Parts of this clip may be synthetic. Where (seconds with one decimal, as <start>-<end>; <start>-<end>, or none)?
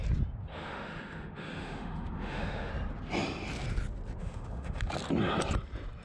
0.5-2.7; 4.2-4.9